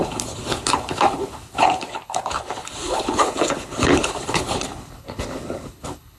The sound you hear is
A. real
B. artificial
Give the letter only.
B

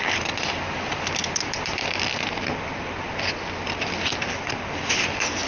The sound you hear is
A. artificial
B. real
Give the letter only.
B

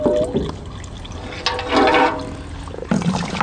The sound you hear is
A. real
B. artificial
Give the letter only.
A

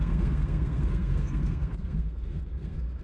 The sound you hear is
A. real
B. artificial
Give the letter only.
B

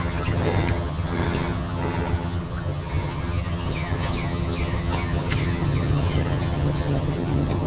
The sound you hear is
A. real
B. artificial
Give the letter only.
B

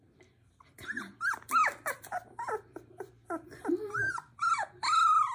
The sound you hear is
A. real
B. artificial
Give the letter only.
B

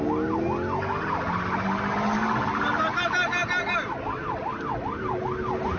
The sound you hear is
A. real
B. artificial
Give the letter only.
A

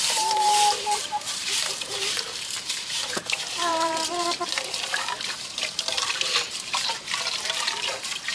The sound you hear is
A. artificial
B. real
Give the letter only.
A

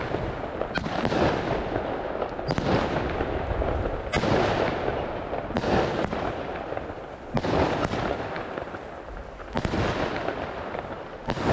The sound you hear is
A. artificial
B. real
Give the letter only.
B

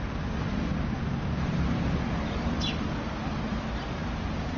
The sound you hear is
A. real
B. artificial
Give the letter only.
A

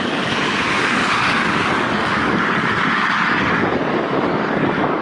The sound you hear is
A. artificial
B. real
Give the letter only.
A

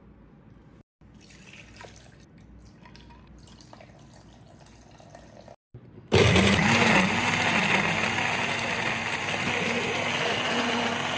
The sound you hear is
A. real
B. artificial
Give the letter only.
A